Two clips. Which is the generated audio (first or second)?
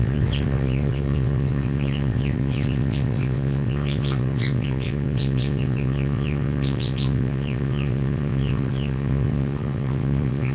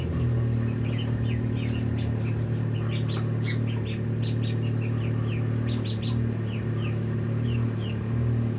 first